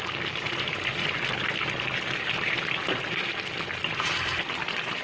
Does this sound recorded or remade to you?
recorded